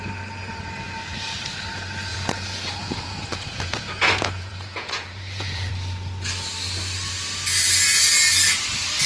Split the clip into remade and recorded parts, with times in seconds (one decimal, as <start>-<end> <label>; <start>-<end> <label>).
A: 0.0-2.1 recorded; 2.1-5.7 remade; 5.7-9.1 recorded